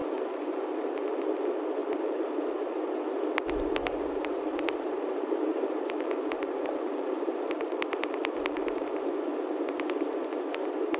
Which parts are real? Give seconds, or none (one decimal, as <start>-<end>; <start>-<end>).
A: 1.2-1.8; 2.3-3.8; 8.9-11.0